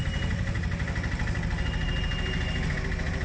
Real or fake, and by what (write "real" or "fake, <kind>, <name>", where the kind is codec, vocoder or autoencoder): real